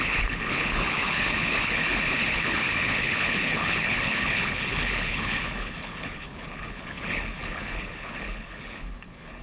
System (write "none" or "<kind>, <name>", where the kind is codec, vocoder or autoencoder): codec, HILCodec